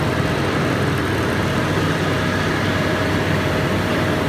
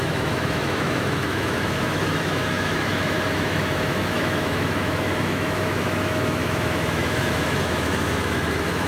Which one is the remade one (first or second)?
second